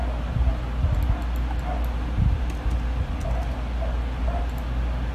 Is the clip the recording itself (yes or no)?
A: yes